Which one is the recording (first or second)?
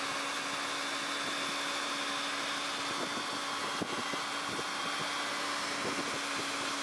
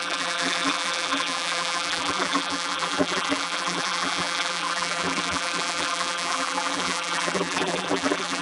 first